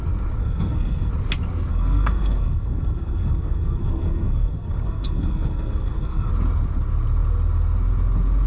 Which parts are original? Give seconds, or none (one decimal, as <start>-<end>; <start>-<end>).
0.0-0.4; 1.1-1.7; 6.3-8.5